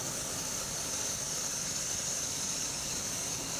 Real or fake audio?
fake